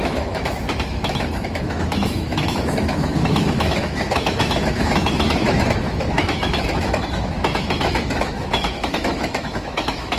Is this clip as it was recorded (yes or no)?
no